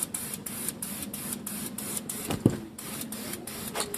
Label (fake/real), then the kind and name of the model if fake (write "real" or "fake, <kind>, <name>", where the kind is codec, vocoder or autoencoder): real